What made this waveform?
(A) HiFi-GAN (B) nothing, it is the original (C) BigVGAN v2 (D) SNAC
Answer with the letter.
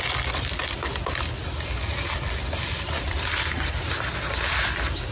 B